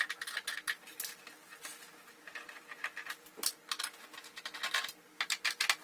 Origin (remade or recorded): recorded